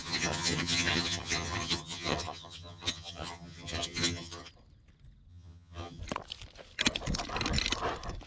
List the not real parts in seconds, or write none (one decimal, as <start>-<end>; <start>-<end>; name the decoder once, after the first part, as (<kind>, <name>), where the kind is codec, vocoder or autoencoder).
0.0-4.5 (vocoder, HiFi-GAN); 5.3-6.0